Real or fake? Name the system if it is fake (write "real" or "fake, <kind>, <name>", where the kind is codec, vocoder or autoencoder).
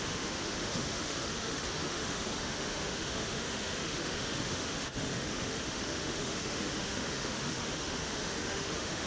fake, autoencoder, DAC-VAE